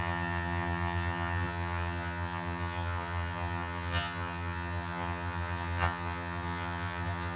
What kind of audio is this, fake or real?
fake